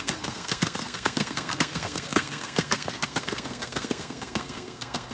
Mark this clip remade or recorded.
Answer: remade